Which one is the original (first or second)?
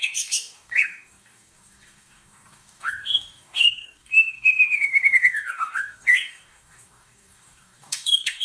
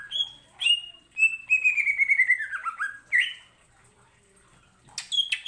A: second